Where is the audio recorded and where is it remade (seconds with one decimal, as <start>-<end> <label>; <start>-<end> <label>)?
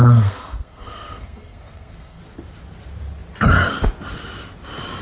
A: 0.0-2.2 remade; 2.2-5.0 recorded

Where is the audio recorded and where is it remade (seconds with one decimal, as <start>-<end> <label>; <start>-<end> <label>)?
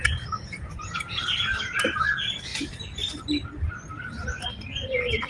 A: 0.0-1.2 remade; 1.2-5.3 recorded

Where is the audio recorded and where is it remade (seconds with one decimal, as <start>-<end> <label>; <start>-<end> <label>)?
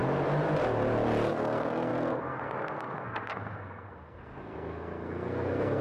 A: 0.0-1.3 recorded; 1.3-5.8 remade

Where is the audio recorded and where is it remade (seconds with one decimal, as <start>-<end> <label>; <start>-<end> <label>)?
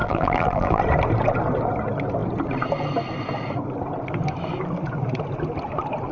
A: 0.0-0.8 remade; 0.8-6.1 recorded